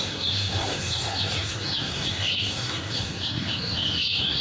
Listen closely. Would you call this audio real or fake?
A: fake